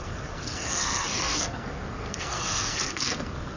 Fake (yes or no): yes